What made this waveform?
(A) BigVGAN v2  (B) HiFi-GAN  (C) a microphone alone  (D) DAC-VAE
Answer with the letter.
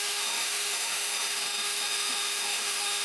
D